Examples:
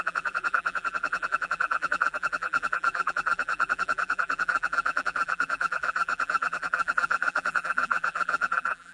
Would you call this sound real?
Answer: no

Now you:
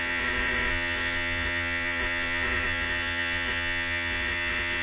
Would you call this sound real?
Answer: no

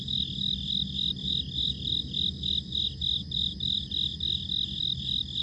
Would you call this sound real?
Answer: yes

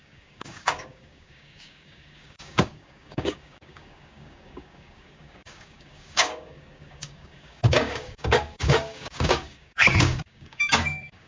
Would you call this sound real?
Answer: no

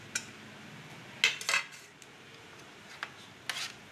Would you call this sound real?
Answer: yes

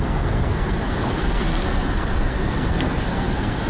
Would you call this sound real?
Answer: no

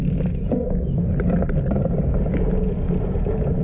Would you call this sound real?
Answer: yes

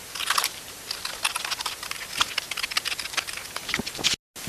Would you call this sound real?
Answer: yes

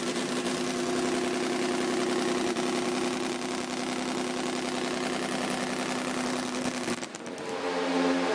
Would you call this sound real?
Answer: yes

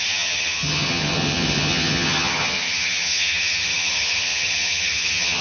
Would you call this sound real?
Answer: no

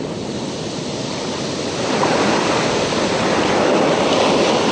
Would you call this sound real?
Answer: yes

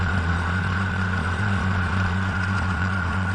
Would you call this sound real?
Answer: no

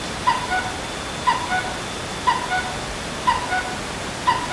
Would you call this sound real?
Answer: yes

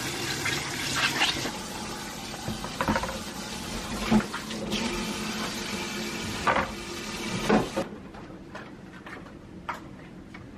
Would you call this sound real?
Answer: yes